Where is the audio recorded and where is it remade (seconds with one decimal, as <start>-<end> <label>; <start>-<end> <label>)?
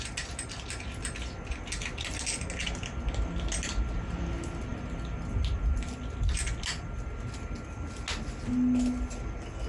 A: 0.0-9.7 recorded